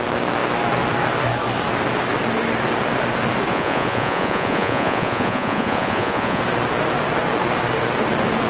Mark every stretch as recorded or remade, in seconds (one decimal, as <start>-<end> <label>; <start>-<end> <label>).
0.0-3.5 recorded; 3.5-6.4 remade; 6.4-8.5 recorded

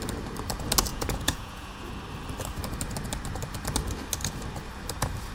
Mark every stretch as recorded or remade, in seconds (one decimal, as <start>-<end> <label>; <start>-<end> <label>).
0.0-0.9 recorded; 0.9-1.9 remade; 1.9-5.3 recorded

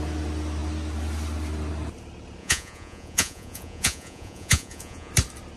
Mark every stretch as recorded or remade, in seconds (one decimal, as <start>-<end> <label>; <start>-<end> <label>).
0.0-2.4 recorded; 2.4-5.1 remade; 5.1-5.6 recorded

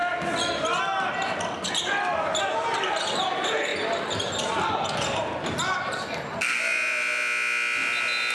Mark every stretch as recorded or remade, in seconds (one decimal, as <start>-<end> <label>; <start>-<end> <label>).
0.0-8.3 recorded

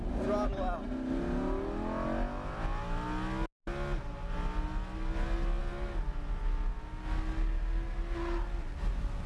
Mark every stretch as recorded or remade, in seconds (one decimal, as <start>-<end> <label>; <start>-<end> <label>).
0.0-9.3 recorded

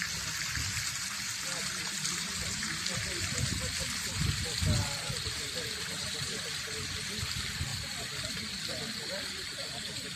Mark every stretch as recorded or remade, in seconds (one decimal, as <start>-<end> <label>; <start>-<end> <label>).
0.0-10.2 recorded

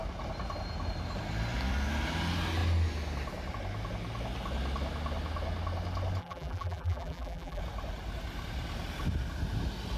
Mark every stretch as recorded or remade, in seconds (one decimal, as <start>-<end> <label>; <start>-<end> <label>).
0.0-6.2 recorded; 6.2-7.6 remade; 7.6-10.0 recorded

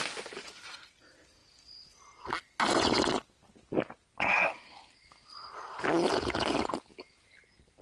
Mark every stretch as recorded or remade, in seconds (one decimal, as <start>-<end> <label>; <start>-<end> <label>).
0.0-7.8 recorded